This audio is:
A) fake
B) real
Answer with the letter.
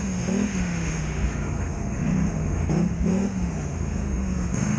A